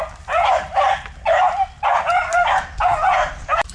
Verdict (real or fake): real